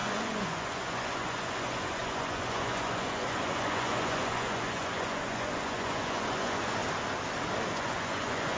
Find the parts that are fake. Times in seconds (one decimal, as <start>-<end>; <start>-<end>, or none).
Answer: 0.0-6.8; 7.7-8.6